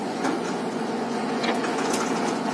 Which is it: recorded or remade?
remade